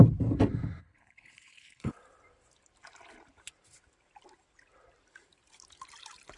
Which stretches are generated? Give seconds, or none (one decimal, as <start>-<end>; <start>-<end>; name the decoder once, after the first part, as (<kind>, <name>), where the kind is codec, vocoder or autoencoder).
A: 0.8-1.9 (codec, HILCodec)

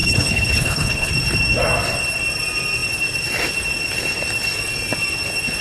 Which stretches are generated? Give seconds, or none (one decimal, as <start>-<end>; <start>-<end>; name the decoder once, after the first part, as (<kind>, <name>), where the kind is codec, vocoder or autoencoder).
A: 0.0-1.1 (codec, HILCodec)